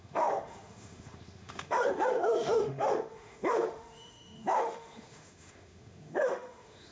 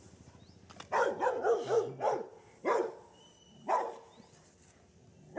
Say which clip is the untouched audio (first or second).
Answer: second